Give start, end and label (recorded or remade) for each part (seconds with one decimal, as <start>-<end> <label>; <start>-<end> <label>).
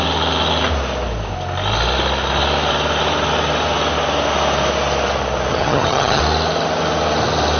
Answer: 0.0-5.5 recorded; 5.5-6.2 remade; 6.2-7.6 recorded